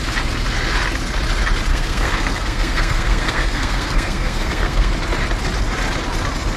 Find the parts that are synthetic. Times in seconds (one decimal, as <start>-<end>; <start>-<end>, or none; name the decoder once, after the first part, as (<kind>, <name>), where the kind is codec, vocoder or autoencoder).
1.7-4.9 (codec, SNAC)